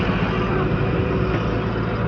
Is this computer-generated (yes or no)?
no